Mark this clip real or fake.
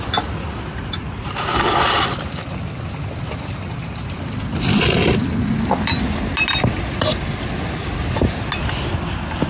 real